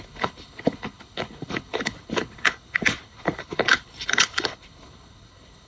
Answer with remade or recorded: remade